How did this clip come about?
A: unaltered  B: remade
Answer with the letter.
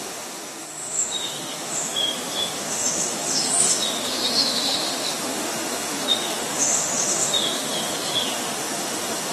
B